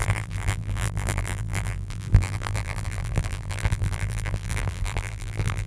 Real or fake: fake